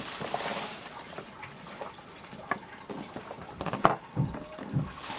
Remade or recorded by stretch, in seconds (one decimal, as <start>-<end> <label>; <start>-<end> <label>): 0.0-5.2 recorded